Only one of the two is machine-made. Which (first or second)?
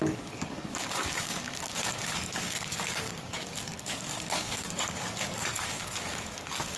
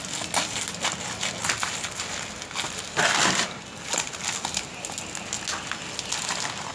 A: first